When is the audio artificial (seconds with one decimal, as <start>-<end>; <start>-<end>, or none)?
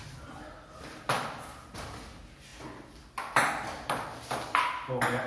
none